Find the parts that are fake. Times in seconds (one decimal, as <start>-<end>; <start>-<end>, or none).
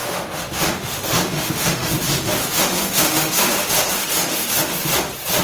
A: 0.0-1.9; 2.4-3.5